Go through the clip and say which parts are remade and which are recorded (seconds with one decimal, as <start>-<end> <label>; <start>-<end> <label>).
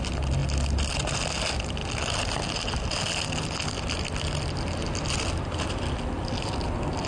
0.0-7.1 recorded